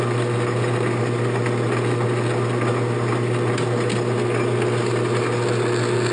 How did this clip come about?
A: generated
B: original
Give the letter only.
B